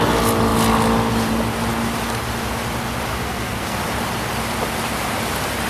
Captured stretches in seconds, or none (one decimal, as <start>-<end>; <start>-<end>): 0.0-3.1; 3.8-5.7